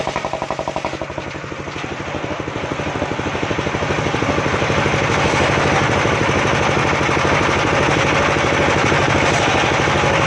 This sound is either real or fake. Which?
real